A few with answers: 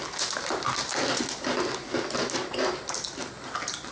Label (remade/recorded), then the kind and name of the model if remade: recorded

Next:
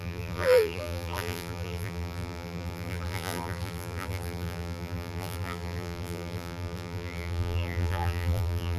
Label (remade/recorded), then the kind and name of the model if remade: remade, vocoder, BigVGAN v2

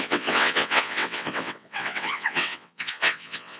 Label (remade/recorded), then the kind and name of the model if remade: remade, vocoder, WaveNeXt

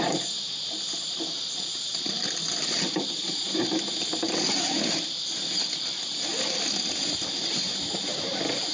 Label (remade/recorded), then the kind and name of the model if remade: recorded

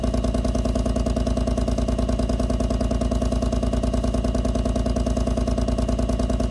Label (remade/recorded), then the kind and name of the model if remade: recorded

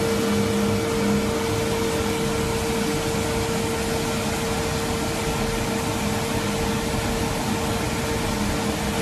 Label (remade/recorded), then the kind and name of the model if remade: recorded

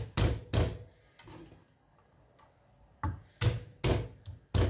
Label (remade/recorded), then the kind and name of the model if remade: recorded